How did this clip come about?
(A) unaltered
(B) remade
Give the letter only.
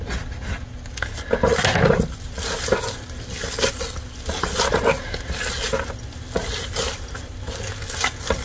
A